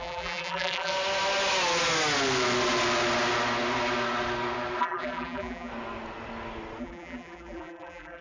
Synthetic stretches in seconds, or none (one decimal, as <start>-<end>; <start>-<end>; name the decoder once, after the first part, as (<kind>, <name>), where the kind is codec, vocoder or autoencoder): 0.0-0.9 (vocoder, BigVGAN v2); 4.8-5.7; 6.8-8.2